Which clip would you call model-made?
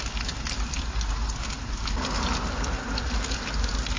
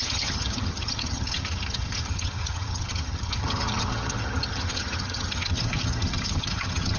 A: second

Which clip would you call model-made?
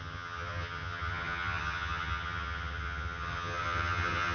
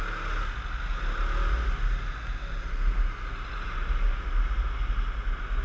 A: first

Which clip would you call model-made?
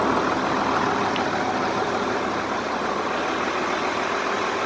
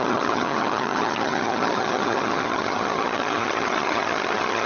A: second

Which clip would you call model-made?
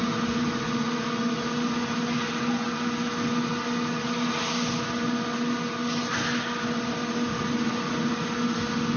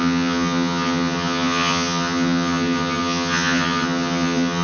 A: second